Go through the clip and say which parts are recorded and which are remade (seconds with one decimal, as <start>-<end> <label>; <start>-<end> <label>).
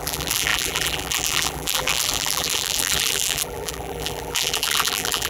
0.0-5.3 remade